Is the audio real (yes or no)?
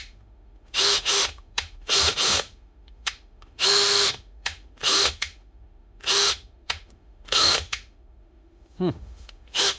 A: no